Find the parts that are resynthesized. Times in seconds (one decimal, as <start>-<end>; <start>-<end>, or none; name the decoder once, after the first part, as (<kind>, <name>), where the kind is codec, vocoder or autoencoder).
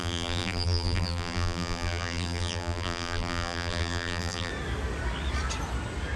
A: 0.0-4.5 (vocoder, BigVGAN v2)